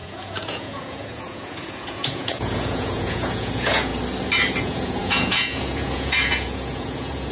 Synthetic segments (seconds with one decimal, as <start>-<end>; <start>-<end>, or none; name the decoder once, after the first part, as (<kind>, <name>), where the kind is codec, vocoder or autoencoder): 0.0-3.9 (vocoder, Vocos); 4.6-7.3